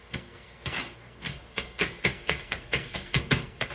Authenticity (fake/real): fake